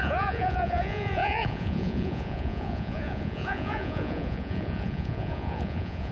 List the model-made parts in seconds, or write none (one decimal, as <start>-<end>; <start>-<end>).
0.0-6.1